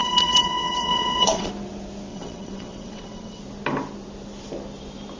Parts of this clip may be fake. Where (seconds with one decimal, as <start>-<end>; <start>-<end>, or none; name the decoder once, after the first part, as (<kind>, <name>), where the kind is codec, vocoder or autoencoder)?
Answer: 0.0-1.5 (vocoder, WaveNeXt); 2.1-3.4

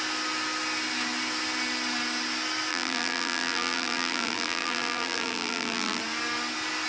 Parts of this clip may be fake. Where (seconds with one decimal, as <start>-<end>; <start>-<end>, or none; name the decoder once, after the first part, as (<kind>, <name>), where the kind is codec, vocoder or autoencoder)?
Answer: 2.7-6.0 (vocoder, BigVGAN v2)

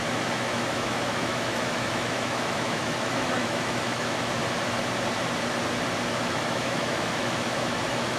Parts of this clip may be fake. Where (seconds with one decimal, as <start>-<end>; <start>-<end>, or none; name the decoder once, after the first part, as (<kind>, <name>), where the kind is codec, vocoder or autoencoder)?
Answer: 0.0-4.4 (autoencoder, DAC-VAE); 6.1-8.2